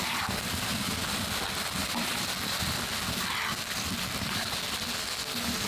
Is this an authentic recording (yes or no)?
yes